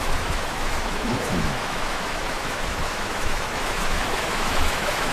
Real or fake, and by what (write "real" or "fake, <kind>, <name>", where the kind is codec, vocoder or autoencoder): fake, autoencoder, DAC-VAE